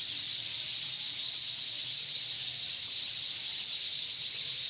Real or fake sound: real